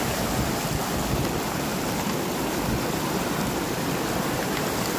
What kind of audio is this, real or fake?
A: real